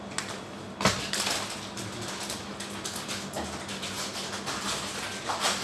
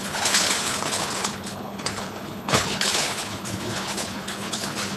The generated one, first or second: second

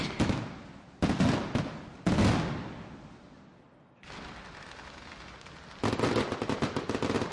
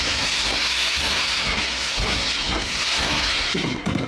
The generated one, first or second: second